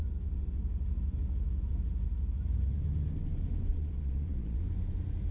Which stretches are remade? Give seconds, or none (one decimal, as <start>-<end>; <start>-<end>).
3.7-4.6